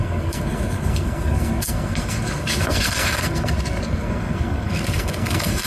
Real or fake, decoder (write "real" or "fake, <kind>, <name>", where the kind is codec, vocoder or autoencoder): fake, codec, SNAC